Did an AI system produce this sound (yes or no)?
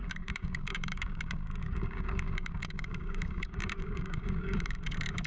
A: yes